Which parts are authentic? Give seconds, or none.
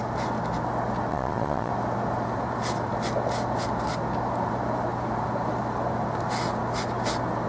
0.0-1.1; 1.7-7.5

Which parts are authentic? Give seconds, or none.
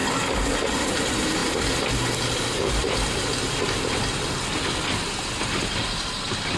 0.0-6.6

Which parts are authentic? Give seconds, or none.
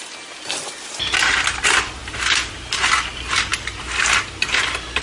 0.0-5.0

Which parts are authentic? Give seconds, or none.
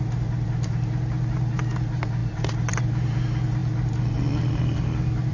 0.0-5.3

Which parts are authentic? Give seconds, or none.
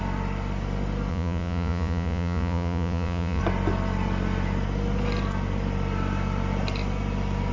0.0-1.1; 3.4-7.5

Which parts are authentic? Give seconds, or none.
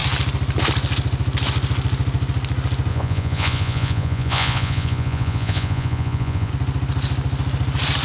0.0-2.9; 6.5-8.0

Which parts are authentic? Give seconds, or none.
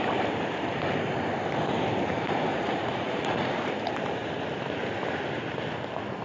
0.0-2.5; 3.7-6.2